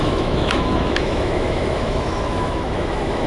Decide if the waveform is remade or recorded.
remade